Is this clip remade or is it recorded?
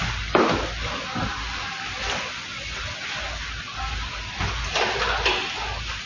recorded